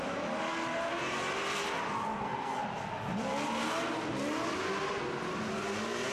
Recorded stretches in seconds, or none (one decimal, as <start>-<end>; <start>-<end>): 0.0-2.1; 2.6-6.1